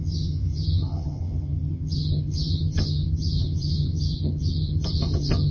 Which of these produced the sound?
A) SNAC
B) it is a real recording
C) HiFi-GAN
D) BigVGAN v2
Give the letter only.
C